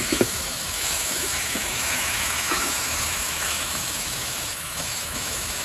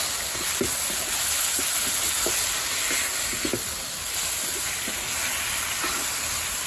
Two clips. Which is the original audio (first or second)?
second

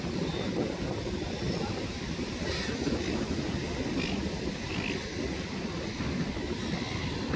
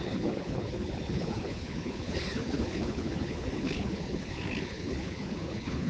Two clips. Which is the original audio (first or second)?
first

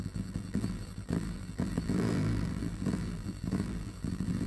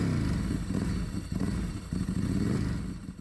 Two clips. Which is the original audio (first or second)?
second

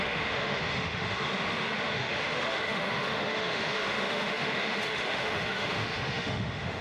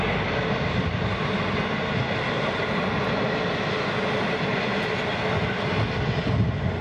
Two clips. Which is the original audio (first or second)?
second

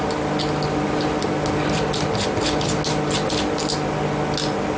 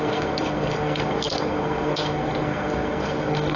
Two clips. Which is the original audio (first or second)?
first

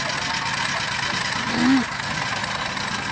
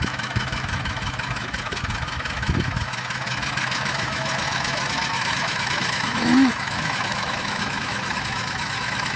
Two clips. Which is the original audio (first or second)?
first